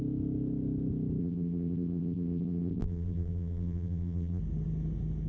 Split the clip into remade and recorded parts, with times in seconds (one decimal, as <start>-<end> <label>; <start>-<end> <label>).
0.0-1.2 recorded; 1.2-4.4 remade; 4.4-5.3 recorded